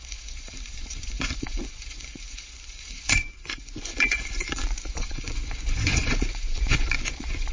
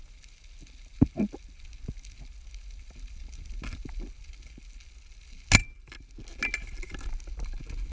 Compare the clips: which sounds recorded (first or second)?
second